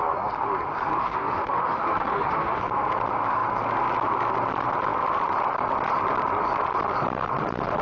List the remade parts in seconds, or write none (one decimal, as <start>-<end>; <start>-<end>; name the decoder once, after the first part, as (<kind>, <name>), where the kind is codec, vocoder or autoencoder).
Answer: 1.0-2.6 (autoencoder, DAC-VAE)